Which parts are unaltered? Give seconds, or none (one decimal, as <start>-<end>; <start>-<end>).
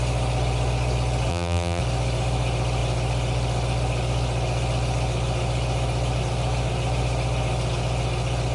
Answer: 0.0-1.3; 1.8-8.5